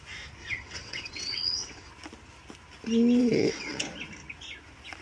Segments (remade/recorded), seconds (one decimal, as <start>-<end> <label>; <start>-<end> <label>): 0.0-0.4 recorded; 0.4-1.9 remade; 1.9-3.2 recorded; 3.2-3.8 remade; 3.8-5.0 recorded

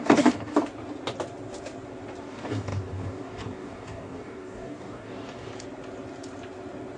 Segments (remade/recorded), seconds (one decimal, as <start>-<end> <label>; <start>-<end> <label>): 0.0-0.6 remade; 0.6-2.2 recorded; 2.2-5.5 remade; 5.5-7.0 recorded

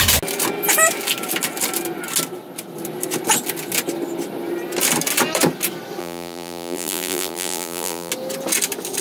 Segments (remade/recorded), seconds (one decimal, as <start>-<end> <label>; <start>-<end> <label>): 0.0-6.0 recorded; 6.0-8.1 remade; 8.1-9.0 recorded

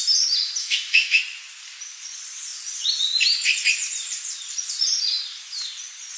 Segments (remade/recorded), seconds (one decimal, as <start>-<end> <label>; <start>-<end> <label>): 0.0-0.6 recorded; 0.6-1.2 remade; 1.2-6.2 recorded

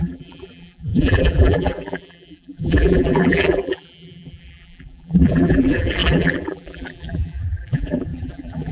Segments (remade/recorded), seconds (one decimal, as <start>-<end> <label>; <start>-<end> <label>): 0.0-8.7 remade